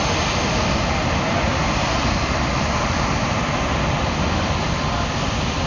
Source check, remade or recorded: recorded